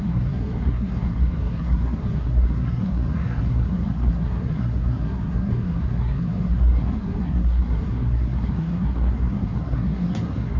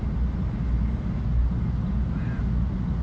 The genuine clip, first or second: second